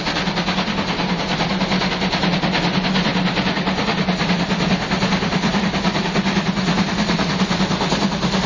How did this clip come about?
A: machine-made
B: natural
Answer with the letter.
B